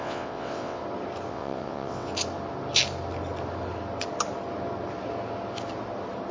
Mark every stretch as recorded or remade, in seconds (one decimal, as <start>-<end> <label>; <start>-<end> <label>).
0.0-0.8 remade; 0.8-1.3 recorded; 1.3-2.1 remade; 2.1-6.3 recorded